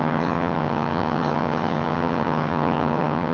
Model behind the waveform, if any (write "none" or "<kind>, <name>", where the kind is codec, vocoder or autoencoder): vocoder, HiFi-GAN